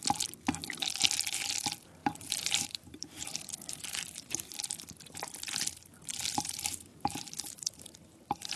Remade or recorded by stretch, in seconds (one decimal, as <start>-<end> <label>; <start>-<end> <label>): 0.0-2.0 recorded; 2.0-4.2 remade; 4.2-6.1 recorded; 6.1-8.6 remade